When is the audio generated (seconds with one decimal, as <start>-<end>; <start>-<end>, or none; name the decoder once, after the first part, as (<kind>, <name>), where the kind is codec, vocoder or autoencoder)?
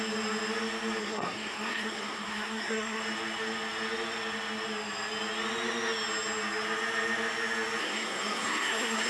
1.0-3.0 (codec, SNAC); 7.8-9.1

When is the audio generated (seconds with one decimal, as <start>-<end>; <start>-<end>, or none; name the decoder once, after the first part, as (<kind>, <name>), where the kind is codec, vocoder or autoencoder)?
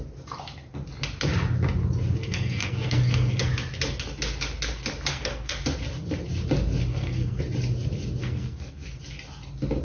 2.2-3.5 (codec, SNAC); 5.1-5.6; 6.9-7.4; 8.2-9.0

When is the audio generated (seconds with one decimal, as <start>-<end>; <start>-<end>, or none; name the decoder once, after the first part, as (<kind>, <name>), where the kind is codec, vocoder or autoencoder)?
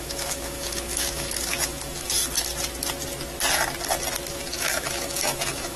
0.0-2.2 (autoencoder, DAC-VAE); 4.3-5.8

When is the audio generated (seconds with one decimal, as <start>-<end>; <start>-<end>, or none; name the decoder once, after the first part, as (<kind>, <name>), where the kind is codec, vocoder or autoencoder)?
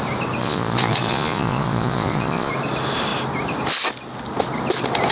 0.4-2.5 (vocoder, Vocos)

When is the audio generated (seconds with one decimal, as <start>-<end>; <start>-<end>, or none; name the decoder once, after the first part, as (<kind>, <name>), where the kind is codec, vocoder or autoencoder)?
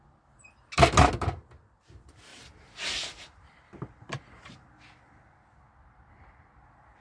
2.3-4.7 (vocoder, BigVGAN v2)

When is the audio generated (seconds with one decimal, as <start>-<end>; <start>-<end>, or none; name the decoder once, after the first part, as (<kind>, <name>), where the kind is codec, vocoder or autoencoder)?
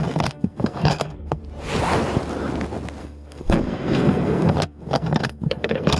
0.0-1.4 (codec, SNAC); 3.0-6.0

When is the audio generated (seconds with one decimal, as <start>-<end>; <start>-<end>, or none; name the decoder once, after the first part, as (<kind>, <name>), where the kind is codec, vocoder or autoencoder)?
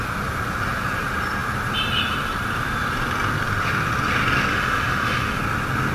4.5-5.4 (autoencoder, DAC-VAE)